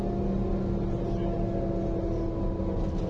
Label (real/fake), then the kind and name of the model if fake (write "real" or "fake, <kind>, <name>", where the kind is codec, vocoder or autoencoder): real